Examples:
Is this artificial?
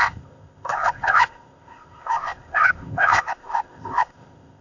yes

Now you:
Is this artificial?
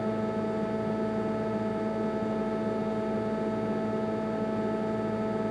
no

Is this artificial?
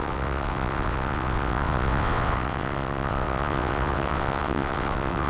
yes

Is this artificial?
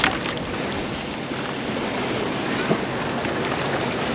no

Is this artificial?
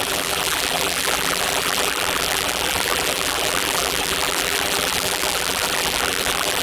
yes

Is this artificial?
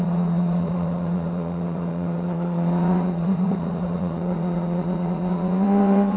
yes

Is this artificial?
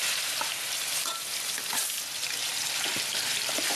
no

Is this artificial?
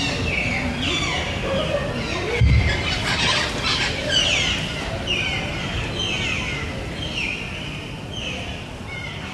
no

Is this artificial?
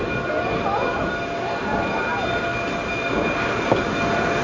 no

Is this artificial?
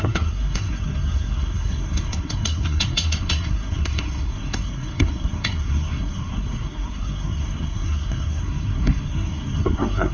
yes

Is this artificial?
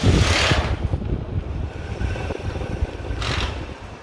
no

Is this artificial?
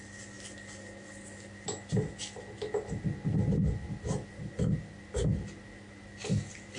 no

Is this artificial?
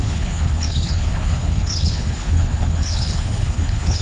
yes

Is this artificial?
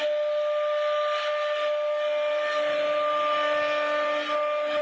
no